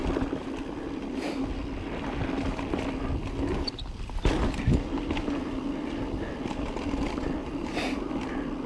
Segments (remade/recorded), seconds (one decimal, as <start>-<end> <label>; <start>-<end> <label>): 0.0-7.4 recorded; 7.4-8.1 remade; 8.1-8.7 recorded